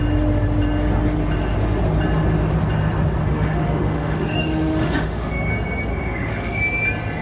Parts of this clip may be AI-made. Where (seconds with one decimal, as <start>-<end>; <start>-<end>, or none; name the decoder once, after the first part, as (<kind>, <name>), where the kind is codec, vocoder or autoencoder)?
3.2-5.5 (autoencoder, DAC-VAE); 5.9-6.6